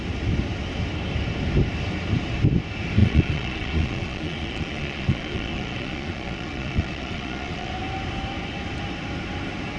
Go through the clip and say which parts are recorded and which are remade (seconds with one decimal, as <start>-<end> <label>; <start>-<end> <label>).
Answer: 0.0-3.0 recorded; 3.0-7.7 remade; 7.7-9.8 recorded